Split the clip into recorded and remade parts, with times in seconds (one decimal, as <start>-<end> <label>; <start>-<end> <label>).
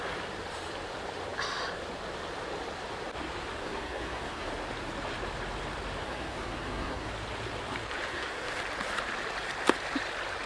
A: 0.0-3.6 recorded; 3.6-4.5 remade; 4.5-6.0 recorded; 6.0-7.1 remade; 7.1-8.1 recorded; 8.1-8.6 remade; 8.6-10.5 recorded